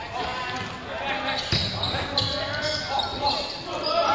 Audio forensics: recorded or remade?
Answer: recorded